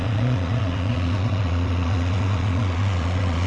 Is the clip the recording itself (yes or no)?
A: no